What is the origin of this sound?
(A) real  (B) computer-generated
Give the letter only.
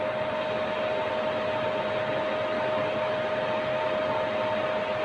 A